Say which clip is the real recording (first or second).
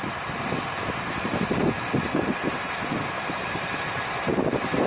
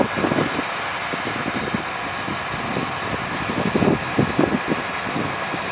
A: second